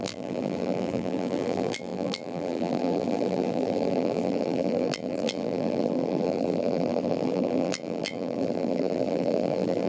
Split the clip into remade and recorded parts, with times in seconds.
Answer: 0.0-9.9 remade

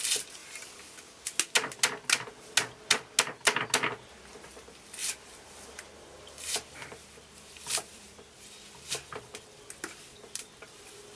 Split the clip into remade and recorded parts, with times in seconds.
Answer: 0.0-5.0 recorded; 5.0-8.3 remade; 8.3-10.1 recorded; 10.1-11.2 remade

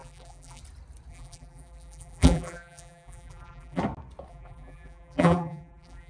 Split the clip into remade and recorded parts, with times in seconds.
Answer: 0.0-0.6 remade; 0.6-1.1 recorded; 1.1-3.8 remade; 3.8-4.3 recorded; 4.3-6.1 remade